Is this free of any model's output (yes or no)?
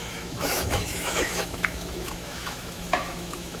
no